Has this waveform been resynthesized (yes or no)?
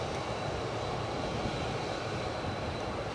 no